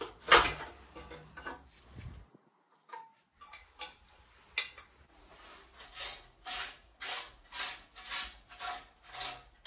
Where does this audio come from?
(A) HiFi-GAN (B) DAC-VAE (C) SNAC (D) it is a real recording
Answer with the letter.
D